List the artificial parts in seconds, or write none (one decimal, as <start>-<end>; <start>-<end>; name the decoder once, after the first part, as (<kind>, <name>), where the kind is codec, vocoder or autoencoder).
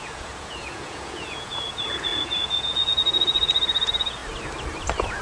0.0-4.2 (vocoder, Vocos)